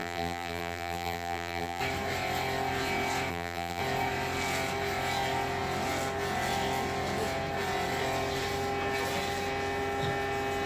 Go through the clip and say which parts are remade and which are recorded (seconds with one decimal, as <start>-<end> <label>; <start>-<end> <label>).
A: 0.0-1.8 remade; 1.8-3.3 recorded; 3.3-3.8 remade; 3.8-10.7 recorded